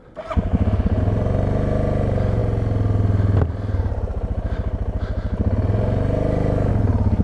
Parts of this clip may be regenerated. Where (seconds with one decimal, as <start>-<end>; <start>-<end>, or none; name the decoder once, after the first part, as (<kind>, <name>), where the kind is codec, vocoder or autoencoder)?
none